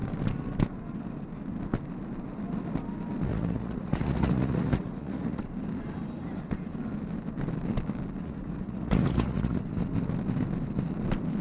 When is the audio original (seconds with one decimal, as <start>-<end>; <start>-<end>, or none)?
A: 0.0-3.3; 5.4-8.2; 9.6-11.4